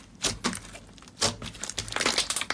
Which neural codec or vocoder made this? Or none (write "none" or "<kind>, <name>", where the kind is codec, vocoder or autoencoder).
none